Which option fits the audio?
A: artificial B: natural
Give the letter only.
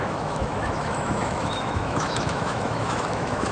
A